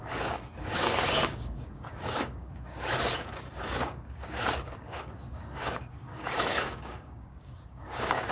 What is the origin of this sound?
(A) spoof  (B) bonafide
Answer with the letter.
A